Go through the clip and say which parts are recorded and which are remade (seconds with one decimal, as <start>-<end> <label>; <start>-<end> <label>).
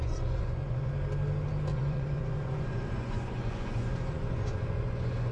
0.0-0.9 remade; 0.9-1.7 recorded; 1.7-5.3 remade